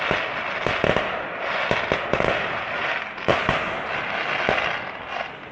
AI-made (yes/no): no